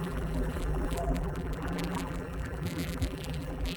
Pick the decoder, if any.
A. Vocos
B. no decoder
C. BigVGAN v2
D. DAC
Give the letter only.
C